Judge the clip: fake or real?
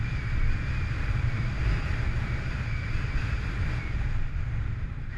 real